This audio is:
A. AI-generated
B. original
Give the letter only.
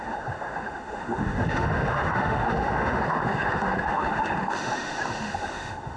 A